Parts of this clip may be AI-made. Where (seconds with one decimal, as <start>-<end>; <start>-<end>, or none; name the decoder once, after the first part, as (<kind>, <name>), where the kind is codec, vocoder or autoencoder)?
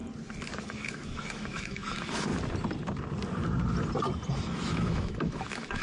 0.6-2.3 (autoencoder, DAC-VAE); 4.3-5.8